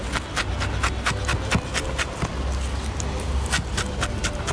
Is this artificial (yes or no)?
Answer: no